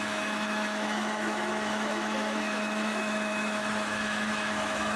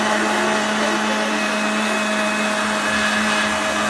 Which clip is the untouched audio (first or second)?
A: second